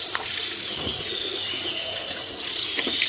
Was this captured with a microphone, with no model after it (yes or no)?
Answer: no